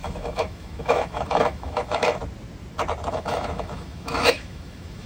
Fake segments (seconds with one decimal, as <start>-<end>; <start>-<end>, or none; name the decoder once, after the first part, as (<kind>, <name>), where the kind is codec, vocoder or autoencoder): 0.0-2.2 (autoencoder, DAC-VAE); 3.1-5.1